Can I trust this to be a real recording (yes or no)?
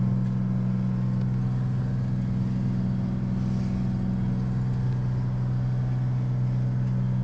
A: yes